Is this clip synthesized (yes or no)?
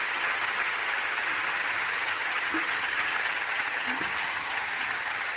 yes